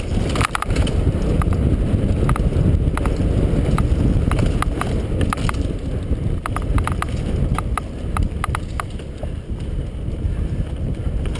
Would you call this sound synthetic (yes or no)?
no